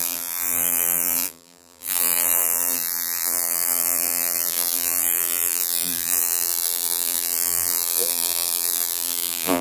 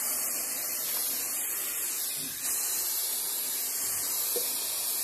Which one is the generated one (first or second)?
first